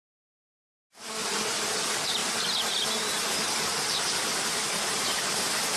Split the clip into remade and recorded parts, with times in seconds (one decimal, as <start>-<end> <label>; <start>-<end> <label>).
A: 0.0-5.8 remade